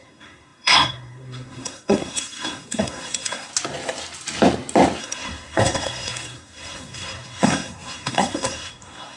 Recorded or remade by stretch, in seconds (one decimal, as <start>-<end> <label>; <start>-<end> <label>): 0.0-3.5 remade; 3.5-5.0 recorded; 5.0-9.2 remade

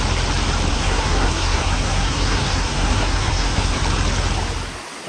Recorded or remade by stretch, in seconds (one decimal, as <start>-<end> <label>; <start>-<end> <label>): 0.0-0.7 recorded; 0.7-3.8 remade; 3.8-5.1 recorded

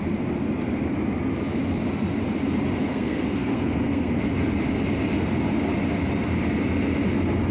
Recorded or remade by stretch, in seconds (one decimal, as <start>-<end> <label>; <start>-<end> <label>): 0.0-2.9 recorded; 2.9-4.2 remade; 4.2-7.5 recorded

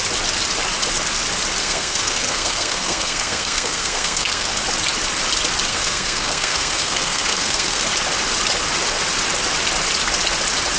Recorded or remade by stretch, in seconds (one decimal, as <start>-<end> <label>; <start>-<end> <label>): 0.0-1.6 recorded; 1.6-4.6 remade; 4.6-5.7 recorded; 5.7-7.8 remade; 7.8-10.8 recorded

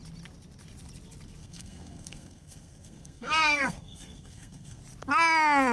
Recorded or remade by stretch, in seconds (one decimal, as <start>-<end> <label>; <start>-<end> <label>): 0.0-1.4 recorded; 1.4-4.8 remade; 4.8-5.7 recorded

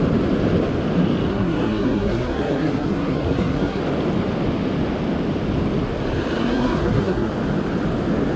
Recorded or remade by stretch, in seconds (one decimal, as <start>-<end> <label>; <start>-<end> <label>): 0.0-1.3 recorded; 1.3-3.8 remade; 3.8-6.4 recorded; 6.4-7.3 remade; 7.3-8.4 recorded

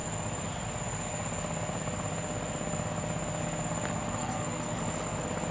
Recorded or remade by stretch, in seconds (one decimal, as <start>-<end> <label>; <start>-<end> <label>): 0.0-4.2 recorded; 4.2-4.8 remade; 4.8-5.5 recorded

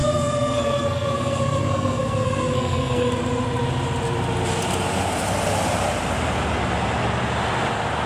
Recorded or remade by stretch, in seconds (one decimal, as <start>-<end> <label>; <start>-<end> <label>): 0.0-3.2 remade; 3.2-8.1 recorded